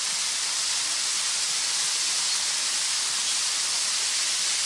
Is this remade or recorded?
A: recorded